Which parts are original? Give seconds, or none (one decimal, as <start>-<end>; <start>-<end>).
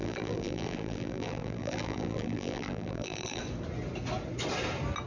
3.4-5.1